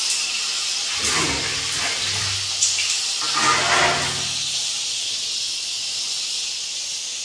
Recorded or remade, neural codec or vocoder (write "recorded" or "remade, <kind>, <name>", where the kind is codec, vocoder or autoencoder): recorded